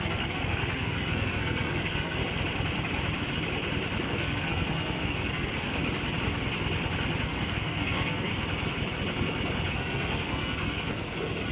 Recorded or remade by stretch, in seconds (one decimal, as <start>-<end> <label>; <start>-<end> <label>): 0.0-2.2 remade; 2.2-4.0 recorded; 4.0-5.8 remade; 5.8-7.2 recorded; 7.2-8.3 remade; 8.3-9.7 recorded; 9.7-11.5 remade